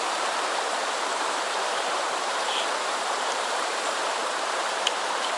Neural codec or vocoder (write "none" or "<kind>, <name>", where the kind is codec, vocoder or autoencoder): vocoder, BigVGAN v2